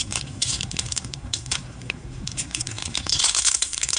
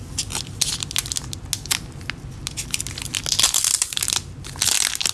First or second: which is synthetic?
first